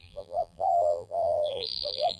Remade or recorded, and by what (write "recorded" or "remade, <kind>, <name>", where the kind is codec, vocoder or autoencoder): remade, vocoder, BigVGAN v2